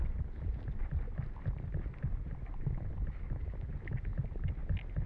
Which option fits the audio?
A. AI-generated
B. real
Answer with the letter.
B